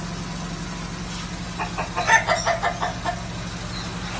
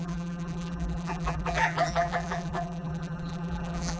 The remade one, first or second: second